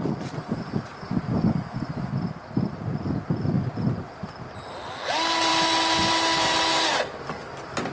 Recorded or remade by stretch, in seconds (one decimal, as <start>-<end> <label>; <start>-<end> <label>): 0.0-7.9 recorded